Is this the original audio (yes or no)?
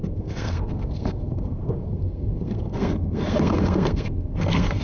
no